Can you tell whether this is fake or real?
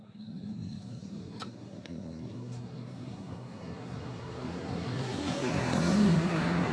fake